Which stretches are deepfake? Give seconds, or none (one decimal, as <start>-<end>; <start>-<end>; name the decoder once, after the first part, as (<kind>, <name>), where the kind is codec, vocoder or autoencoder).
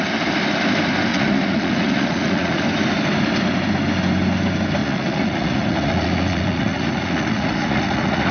1.1-2.6 (vocoder, Vocos); 4.8-8.3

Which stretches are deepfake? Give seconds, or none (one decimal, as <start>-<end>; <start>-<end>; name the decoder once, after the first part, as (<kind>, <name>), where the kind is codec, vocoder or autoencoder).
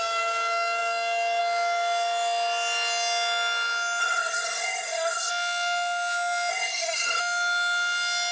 4.0-5.3 (codec, SNAC); 6.5-7.2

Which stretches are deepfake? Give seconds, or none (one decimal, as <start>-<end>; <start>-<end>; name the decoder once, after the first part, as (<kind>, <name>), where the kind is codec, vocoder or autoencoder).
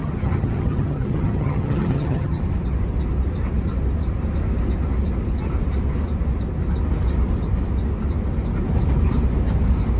0.0-2.4 (vocoder, HiFi-GAN)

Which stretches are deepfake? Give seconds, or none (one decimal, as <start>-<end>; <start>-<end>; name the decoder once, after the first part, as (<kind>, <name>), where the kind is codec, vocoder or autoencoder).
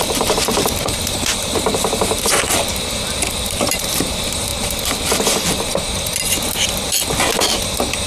0.0-4.5 (vocoder, BigVGAN v2)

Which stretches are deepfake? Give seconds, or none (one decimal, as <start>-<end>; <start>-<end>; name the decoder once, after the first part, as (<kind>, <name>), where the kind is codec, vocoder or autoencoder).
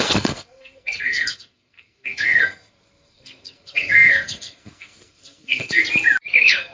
0.0-5.8 (codec, SNAC); 6.3-6.7